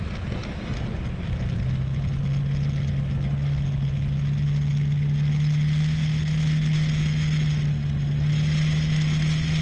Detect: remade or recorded recorded